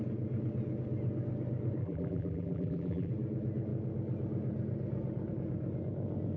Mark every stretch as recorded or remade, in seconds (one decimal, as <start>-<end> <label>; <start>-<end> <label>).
0.0-1.8 recorded; 1.8-3.1 remade; 3.1-6.4 recorded